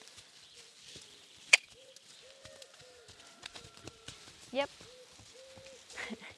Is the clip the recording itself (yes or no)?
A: yes